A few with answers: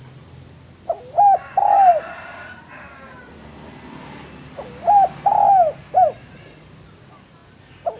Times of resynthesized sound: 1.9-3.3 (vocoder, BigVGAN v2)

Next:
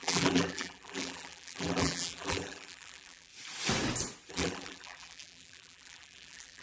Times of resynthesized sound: 0.0-3.3 (vocoder, BigVGAN v2); 4.3-6.6